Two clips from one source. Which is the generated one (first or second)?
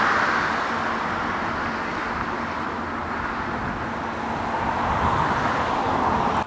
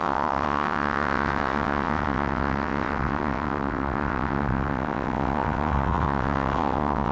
second